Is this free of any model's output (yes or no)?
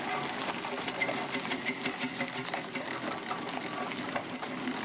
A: yes